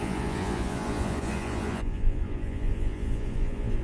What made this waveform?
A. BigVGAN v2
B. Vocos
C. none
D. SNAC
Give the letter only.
B